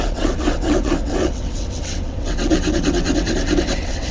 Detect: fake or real fake